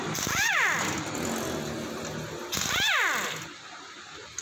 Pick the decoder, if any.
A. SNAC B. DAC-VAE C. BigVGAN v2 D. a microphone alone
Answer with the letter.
D